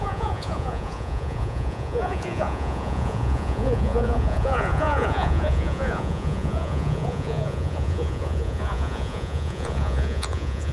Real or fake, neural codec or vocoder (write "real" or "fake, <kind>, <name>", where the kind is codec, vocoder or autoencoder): fake, vocoder, Vocos